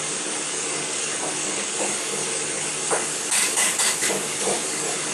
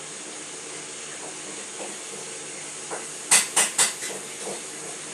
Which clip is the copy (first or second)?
first